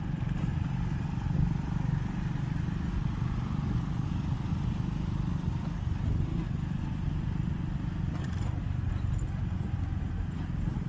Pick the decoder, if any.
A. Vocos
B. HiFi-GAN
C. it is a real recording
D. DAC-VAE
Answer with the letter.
C